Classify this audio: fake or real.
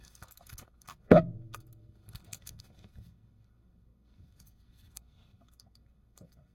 fake